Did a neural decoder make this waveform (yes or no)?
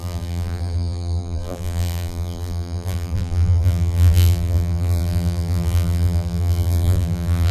yes